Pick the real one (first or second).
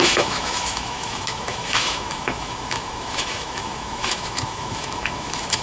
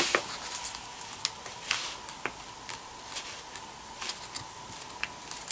second